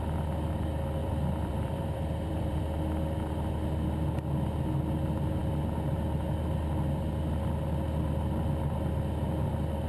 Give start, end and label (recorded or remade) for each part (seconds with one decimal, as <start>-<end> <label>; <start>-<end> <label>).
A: 0.0-1.0 recorded; 1.0-2.6 remade; 2.6-9.9 recorded